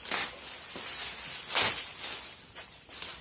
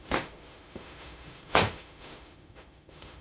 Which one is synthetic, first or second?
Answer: second